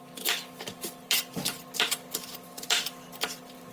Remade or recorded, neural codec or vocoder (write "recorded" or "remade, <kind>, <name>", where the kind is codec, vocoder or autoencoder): recorded